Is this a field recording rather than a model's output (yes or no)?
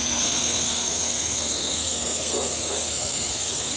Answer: no